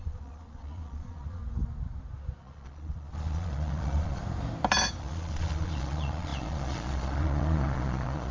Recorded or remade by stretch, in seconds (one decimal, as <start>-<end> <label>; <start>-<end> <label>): 0.0-1.4 remade; 1.4-2.4 recorded; 2.4-4.2 remade; 4.2-5.0 recorded; 5.0-8.3 remade